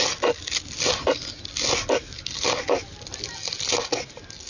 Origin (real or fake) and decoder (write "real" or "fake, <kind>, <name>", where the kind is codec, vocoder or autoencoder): real